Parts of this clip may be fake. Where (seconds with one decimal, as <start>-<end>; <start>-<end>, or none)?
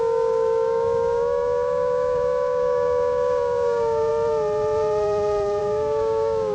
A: 0.0-4.1; 5.6-6.5